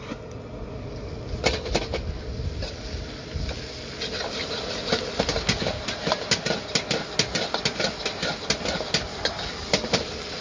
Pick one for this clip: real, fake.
real